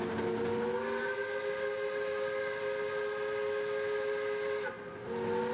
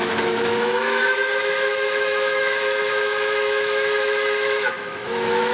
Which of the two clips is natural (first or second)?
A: first